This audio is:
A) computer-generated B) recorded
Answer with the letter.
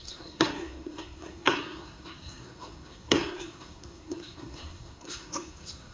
A